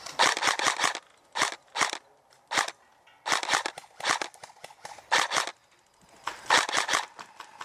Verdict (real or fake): real